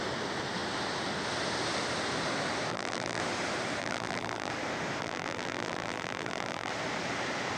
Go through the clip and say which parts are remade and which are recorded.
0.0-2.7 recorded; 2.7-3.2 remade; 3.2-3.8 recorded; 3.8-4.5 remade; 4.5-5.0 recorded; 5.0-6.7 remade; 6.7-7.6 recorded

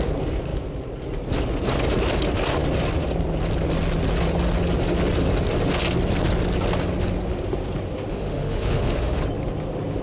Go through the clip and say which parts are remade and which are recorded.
0.0-8.1 recorded; 8.1-9.2 remade; 9.2-10.0 recorded